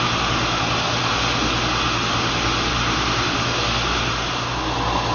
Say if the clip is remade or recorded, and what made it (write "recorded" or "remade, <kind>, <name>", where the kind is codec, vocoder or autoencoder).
recorded